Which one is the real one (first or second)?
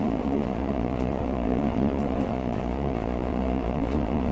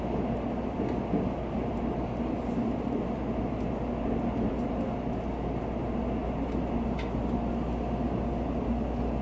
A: second